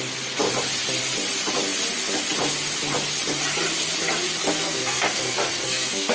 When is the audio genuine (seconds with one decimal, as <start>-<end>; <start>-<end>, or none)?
0.0-4.5